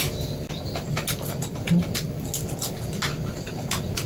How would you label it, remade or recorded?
recorded